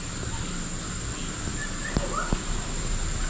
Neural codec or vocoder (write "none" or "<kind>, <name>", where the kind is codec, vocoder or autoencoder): none